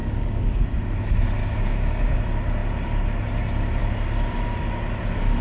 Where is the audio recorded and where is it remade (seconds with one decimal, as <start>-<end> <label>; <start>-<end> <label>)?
0.0-0.6 remade; 0.6-1.4 recorded; 1.4-2.2 remade; 2.2-5.4 recorded